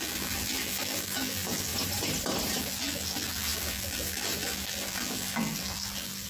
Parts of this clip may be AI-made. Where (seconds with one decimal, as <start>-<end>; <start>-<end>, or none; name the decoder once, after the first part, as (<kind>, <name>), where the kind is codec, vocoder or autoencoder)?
0.0-1.7 (vocoder, BigVGAN v2); 2.6-6.3